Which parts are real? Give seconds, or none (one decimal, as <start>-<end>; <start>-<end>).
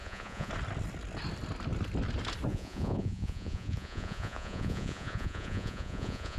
0.5-2.5